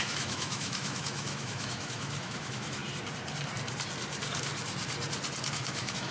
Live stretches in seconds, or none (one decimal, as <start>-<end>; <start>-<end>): 2.8-5.5